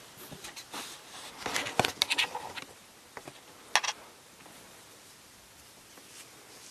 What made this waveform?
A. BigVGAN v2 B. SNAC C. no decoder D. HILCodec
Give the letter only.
C